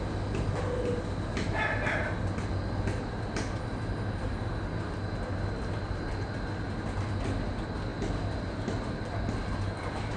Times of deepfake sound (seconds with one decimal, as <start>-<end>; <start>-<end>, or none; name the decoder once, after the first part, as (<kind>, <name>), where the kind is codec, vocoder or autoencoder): none